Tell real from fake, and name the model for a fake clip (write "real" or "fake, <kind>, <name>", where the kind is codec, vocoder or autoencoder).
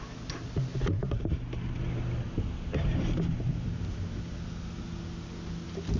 real